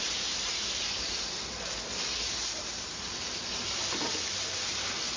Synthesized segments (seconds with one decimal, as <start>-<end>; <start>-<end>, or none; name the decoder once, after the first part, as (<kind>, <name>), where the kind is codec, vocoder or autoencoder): 0.0-3.1 (vocoder, BigVGAN v2)